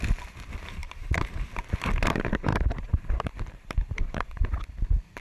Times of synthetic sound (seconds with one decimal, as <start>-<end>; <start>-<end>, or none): 0.8-1.6; 2.5-4.3